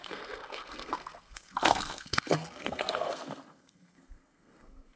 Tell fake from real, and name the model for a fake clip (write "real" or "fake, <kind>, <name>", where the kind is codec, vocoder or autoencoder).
fake, codec, SNAC